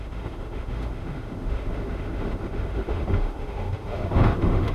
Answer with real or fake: fake